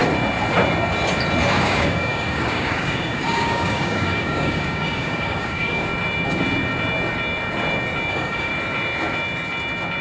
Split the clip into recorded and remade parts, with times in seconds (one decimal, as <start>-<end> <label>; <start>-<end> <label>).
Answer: 0.0-1.6 recorded; 1.6-5.9 remade; 5.9-8.1 recorded; 8.1-8.5 remade; 8.5-10.0 recorded